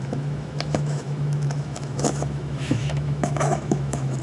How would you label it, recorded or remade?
remade